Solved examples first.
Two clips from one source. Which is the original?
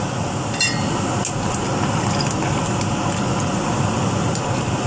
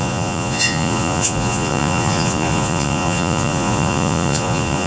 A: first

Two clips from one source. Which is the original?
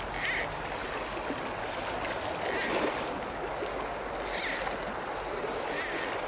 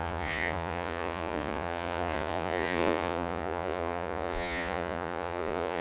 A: first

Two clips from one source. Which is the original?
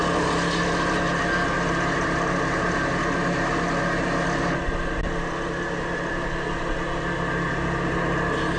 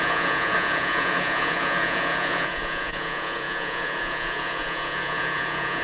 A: first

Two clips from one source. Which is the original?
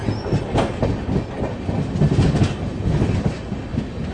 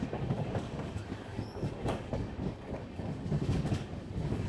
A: first